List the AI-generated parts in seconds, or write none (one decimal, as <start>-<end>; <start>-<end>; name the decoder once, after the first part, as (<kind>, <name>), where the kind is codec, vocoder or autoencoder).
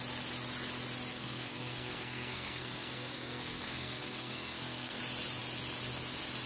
1.1-5.0 (codec, SNAC)